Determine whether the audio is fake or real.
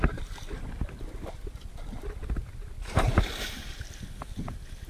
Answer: real